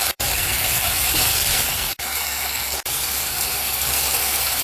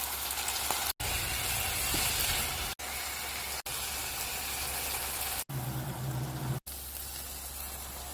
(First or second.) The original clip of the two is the second